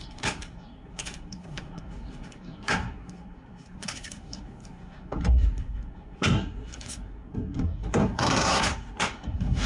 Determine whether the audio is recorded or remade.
remade